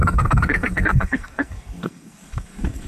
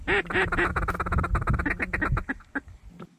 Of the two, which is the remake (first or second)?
first